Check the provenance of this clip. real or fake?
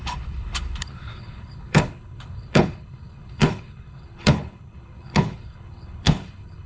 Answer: fake